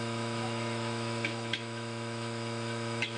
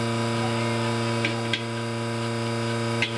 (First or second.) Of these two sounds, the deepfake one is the first